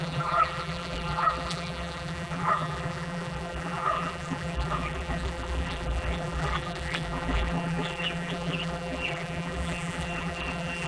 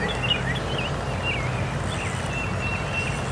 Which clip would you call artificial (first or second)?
first